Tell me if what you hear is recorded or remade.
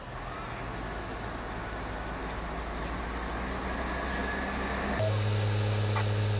recorded